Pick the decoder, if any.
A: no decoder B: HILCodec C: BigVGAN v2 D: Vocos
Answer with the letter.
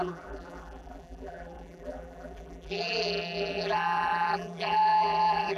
C